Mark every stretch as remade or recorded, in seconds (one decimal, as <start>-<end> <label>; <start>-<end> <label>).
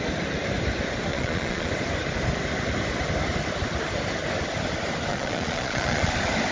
0.0-1.1 recorded; 1.1-1.7 remade; 1.7-5.1 recorded; 5.1-6.1 remade; 6.1-6.5 recorded